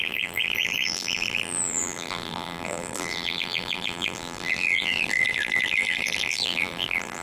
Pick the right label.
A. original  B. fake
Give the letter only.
B